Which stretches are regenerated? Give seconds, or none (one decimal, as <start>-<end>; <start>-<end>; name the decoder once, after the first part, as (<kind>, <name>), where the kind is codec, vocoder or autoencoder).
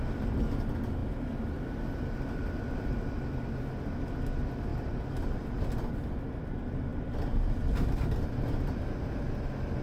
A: 4.7-5.9 (vocoder, BigVGAN v2)